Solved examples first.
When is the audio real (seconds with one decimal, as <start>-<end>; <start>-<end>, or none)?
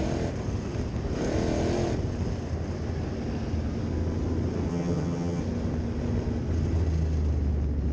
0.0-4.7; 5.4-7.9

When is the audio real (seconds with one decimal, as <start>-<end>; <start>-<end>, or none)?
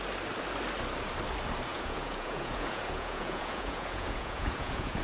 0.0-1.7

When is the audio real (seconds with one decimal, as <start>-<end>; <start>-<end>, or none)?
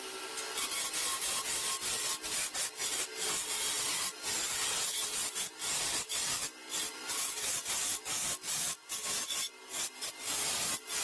0.0-11.0